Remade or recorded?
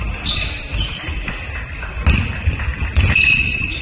recorded